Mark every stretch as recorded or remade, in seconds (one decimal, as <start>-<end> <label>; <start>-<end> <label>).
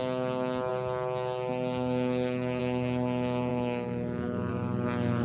0.0-3.5 recorded; 3.5-4.5 remade; 4.5-5.2 recorded